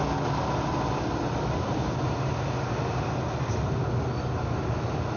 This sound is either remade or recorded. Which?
recorded